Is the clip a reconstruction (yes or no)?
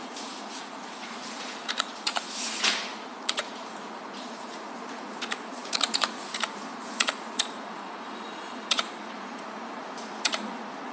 yes